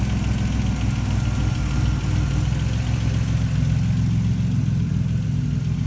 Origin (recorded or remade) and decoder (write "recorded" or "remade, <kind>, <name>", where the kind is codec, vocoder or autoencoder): recorded